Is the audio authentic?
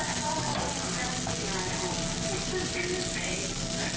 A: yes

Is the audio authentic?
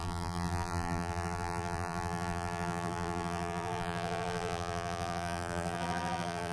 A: no